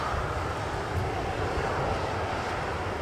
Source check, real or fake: real